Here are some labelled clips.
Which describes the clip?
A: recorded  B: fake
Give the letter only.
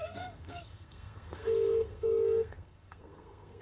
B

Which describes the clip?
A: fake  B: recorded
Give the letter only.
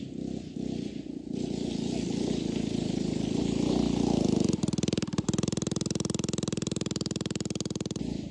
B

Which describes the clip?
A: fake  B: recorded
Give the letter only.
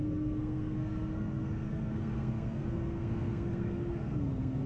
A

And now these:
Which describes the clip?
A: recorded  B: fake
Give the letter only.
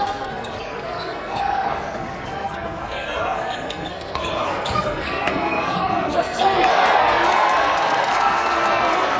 B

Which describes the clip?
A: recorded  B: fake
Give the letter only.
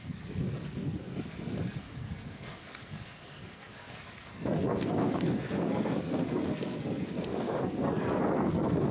B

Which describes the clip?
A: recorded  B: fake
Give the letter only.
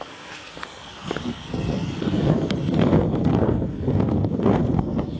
B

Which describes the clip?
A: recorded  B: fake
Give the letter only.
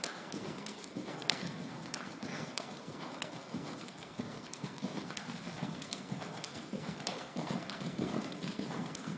B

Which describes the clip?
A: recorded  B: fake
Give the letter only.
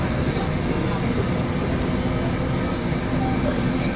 A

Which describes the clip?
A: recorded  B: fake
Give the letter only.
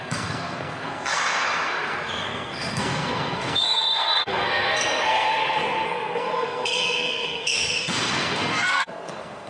B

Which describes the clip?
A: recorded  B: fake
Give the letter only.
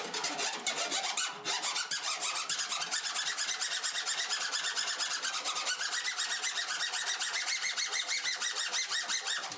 A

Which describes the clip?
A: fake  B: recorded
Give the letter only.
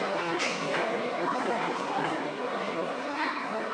A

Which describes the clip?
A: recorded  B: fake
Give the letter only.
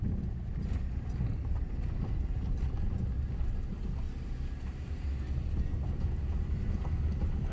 A